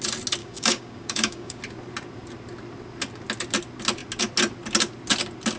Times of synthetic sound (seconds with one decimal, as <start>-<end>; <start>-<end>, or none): 0.4-1.6